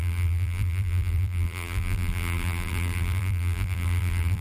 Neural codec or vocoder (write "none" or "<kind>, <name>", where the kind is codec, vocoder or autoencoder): vocoder, BigVGAN v2